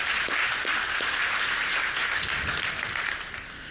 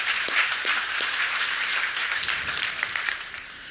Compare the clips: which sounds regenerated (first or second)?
second